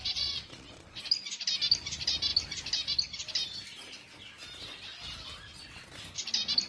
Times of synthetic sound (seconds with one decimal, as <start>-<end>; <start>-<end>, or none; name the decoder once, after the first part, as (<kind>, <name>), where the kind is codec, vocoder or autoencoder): 0.0-1.0 (vocoder, Vocos)